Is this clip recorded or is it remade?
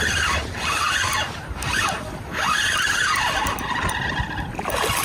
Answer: recorded